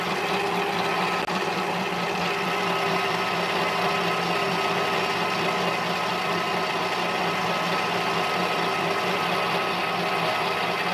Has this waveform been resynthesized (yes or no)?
no